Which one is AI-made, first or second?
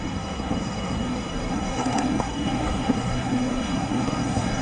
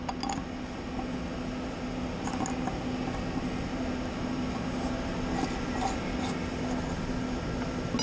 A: first